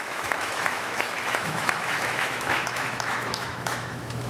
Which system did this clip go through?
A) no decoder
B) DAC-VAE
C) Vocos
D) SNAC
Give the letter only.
B